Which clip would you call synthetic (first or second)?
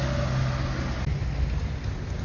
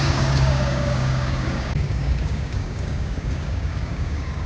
second